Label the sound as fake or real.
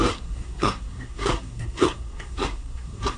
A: fake